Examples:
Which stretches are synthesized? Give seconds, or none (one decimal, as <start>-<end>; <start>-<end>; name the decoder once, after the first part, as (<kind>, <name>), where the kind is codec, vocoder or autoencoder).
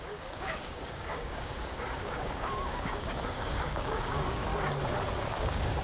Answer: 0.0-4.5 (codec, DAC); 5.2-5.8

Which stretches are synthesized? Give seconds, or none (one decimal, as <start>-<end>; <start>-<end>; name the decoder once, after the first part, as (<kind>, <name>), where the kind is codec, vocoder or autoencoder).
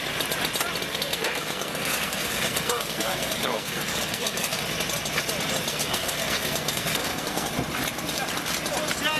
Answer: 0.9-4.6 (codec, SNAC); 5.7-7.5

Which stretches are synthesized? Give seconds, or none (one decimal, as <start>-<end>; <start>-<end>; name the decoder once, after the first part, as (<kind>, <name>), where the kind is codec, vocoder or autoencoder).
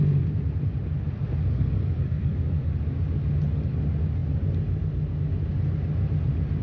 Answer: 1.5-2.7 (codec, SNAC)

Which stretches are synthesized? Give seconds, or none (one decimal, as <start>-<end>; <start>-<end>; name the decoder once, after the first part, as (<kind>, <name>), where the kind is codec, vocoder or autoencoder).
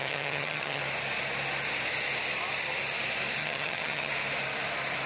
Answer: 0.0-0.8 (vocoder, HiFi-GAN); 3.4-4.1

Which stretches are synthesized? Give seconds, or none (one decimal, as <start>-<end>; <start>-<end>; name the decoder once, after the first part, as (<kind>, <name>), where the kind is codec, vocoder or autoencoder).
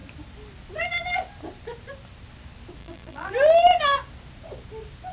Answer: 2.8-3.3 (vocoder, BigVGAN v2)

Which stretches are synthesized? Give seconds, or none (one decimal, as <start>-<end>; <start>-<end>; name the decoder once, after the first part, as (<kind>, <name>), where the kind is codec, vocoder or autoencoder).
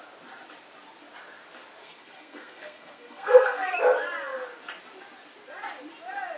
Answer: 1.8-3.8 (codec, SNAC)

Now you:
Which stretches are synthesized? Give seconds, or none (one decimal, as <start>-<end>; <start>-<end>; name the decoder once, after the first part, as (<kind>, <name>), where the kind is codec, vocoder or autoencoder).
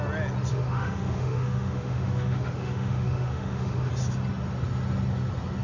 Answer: 0.5-3.9 (autoencoder, DAC-VAE)